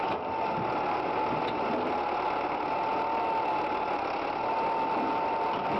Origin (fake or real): real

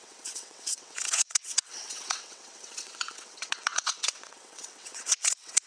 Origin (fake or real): fake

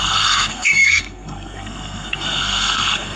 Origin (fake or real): fake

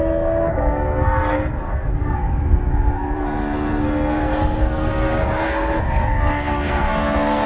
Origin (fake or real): fake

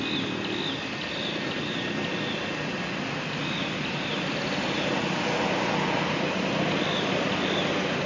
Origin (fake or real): real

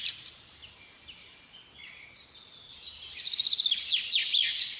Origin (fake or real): real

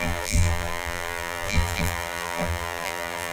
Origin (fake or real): fake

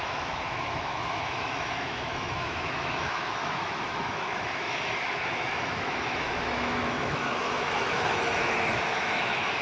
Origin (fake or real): fake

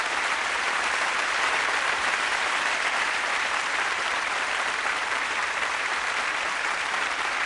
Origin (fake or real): fake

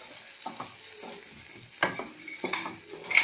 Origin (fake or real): real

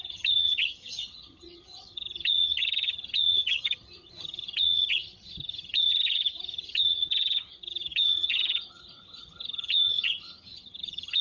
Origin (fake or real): fake